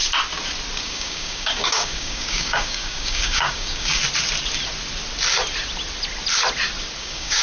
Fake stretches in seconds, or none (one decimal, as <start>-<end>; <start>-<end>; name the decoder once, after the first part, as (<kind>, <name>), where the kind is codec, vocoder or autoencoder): 0.8-4.0 (codec, DAC); 7.0-7.4